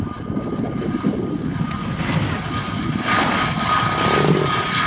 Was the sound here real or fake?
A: real